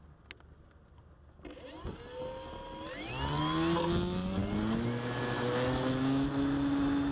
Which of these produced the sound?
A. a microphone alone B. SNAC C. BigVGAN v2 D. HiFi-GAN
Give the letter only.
A